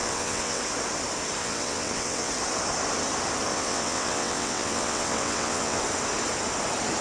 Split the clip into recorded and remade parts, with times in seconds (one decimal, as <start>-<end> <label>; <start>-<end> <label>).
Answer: 0.0-0.6 remade; 0.6-1.4 recorded; 1.4-2.3 remade; 2.3-3.5 recorded; 3.5-5.8 remade; 5.8-7.0 recorded